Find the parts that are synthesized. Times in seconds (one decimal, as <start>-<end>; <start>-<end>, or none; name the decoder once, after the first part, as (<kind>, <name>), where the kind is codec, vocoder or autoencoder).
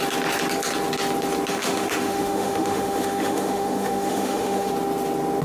1.5-4.7 (autoencoder, DAC-VAE)